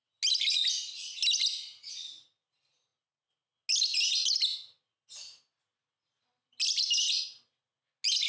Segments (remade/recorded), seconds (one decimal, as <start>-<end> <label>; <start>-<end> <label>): 0.0-8.3 recorded